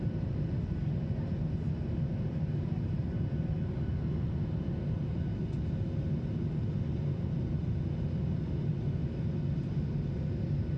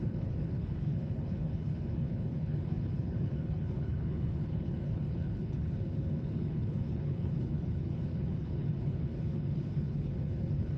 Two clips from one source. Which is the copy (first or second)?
second